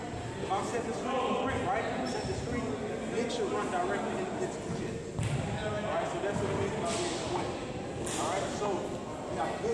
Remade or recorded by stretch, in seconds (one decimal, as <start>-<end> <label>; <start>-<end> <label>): 0.0-9.7 recorded